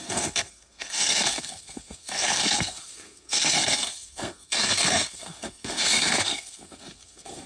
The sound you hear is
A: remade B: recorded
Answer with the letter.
A